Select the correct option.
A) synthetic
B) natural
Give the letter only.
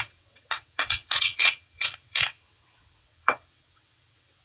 A